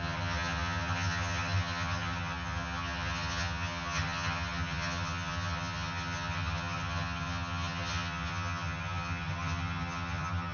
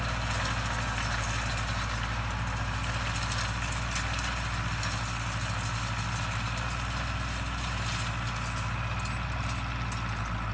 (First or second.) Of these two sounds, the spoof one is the first